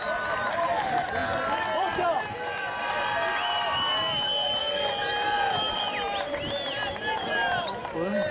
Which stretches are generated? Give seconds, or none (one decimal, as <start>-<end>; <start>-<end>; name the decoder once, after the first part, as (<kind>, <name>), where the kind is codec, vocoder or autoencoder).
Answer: none